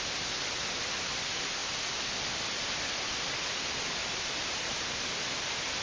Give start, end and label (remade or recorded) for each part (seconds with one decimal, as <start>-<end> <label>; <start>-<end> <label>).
0.0-5.8 recorded